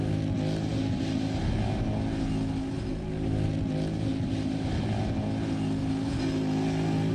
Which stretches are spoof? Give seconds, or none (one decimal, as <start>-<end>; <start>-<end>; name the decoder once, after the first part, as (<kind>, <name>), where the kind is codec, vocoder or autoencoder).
none